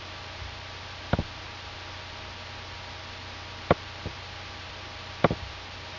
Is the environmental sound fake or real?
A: real